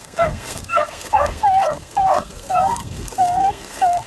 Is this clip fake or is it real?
fake